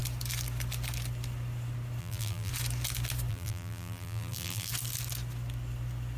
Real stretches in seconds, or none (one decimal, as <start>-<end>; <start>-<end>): 0.0-2.0; 2.5-3.3; 4.7-6.2